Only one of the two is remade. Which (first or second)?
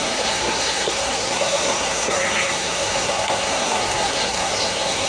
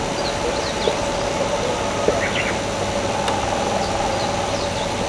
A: first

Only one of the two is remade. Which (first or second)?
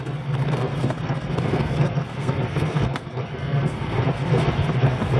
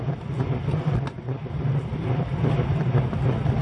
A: first